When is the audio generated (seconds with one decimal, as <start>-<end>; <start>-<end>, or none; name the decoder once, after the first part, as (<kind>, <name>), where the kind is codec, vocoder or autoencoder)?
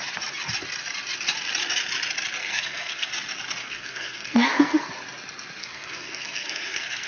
2.4-3.1 (codec, SNAC); 3.6-4.9; 5.6-7.1